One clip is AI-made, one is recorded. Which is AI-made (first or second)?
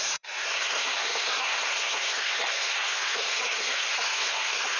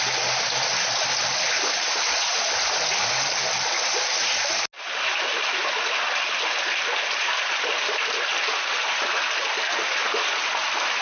first